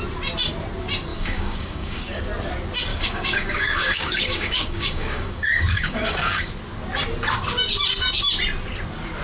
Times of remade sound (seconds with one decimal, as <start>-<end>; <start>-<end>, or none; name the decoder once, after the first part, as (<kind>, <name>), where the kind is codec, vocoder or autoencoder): 1.1-2.2 (codec, DAC); 2.9-6.5